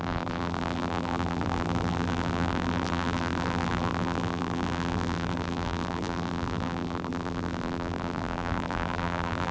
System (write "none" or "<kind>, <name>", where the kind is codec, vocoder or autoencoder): vocoder, BigVGAN v2